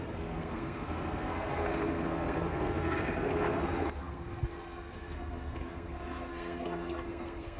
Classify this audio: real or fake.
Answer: fake